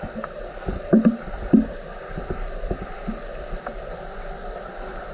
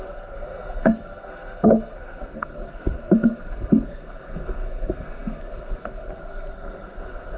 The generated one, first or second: second